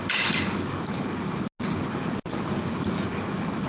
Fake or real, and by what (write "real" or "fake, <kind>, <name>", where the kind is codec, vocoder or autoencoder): real